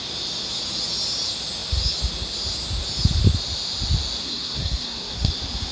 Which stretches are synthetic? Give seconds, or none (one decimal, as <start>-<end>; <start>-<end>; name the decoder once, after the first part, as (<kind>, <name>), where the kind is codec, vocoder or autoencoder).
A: 4.2-5.3 (codec, SNAC)